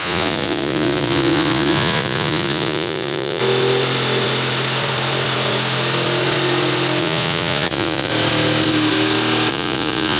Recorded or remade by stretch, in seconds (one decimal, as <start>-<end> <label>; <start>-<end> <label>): 0.0-3.4 remade; 3.4-7.0 recorded; 7.0-8.1 remade; 8.1-9.5 recorded; 9.5-10.2 remade